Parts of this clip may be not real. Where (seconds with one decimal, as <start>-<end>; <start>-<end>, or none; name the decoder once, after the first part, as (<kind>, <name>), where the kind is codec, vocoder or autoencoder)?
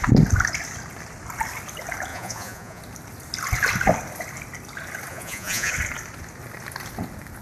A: 2.1-2.8 (vocoder, Vocos); 5.1-5.7